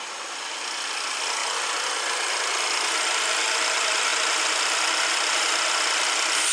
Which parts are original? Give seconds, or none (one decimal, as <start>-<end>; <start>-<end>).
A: 0.0-6.5

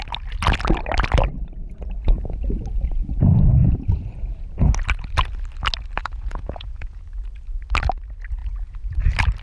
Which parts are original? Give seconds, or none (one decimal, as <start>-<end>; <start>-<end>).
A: 0.0-3.6; 4.7-6.0; 7.0-8.4; 9.0-9.4

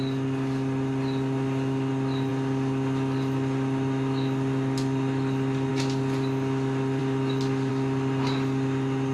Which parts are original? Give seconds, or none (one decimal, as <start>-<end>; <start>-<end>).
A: 0.0-9.1